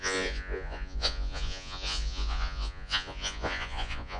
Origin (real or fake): fake